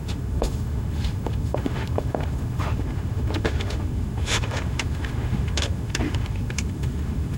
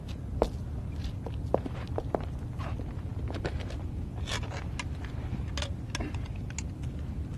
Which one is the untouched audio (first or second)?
second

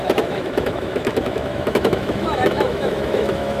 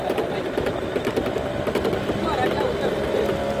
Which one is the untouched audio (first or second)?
second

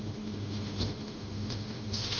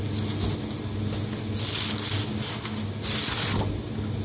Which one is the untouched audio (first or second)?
second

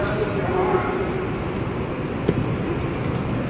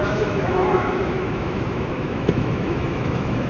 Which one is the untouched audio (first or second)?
first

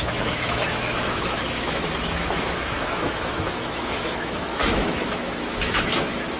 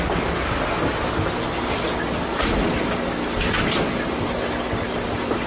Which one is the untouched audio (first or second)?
second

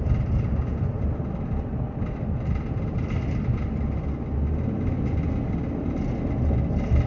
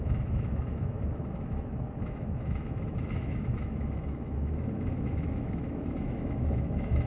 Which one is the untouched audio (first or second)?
first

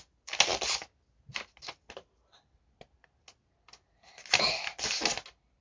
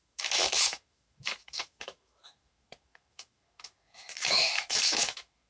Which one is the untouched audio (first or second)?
first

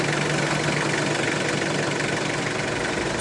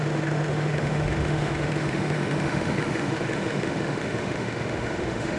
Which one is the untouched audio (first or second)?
first